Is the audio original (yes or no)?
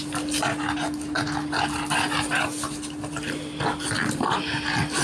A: yes